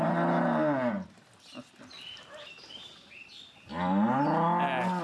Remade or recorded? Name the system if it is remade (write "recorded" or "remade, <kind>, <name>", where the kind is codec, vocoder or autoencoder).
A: recorded